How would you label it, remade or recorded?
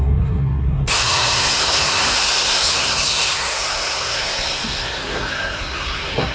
remade